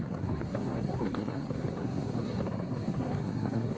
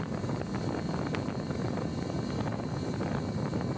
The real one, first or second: second